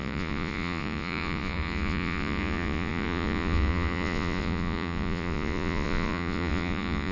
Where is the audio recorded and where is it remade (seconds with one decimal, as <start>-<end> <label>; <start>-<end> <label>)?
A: 0.0-7.1 remade